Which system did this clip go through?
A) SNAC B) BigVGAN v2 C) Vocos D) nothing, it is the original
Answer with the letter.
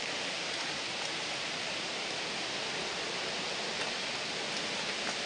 D